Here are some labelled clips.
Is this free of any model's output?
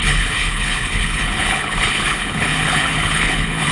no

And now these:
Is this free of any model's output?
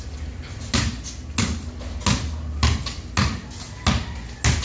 yes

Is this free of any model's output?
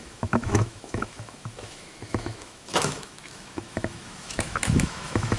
no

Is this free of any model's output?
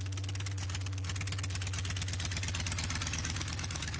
yes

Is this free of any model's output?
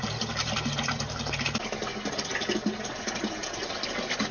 yes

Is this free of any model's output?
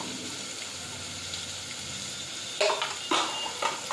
yes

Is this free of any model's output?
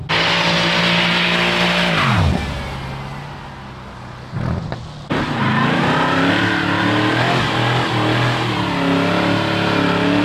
yes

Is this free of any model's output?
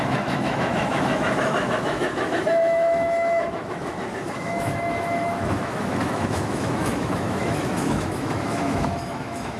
no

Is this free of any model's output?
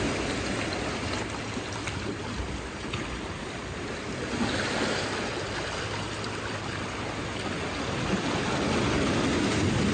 yes